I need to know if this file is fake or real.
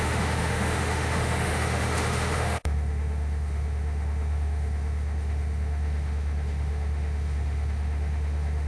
fake